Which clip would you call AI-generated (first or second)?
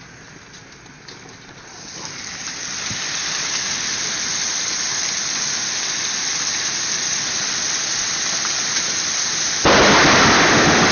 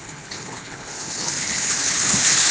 second